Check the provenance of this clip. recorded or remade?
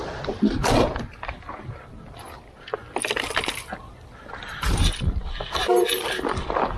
recorded